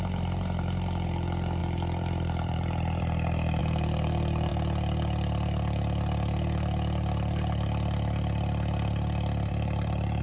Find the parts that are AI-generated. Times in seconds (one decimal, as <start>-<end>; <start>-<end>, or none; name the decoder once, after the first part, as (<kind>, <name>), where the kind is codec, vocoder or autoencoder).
0.0-4.5 (vocoder, BigVGAN v2); 9.5-10.2